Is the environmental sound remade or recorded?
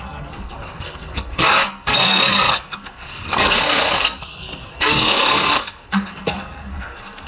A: remade